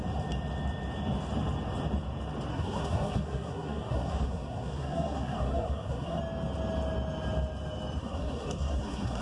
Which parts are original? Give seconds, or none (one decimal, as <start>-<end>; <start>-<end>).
0.0-2.5; 6.2-8.0